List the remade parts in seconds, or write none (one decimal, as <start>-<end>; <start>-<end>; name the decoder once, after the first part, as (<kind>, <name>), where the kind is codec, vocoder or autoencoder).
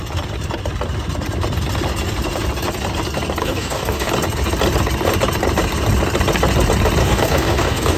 3.4-4.1 (codec, DAC); 7.0-8.0